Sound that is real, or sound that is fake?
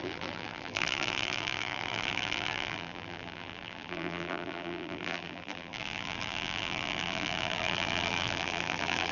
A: fake